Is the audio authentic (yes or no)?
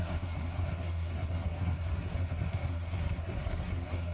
no